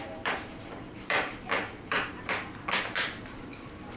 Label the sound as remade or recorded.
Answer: remade